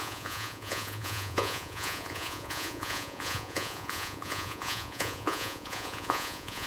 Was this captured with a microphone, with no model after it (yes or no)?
no